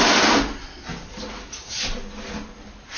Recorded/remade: recorded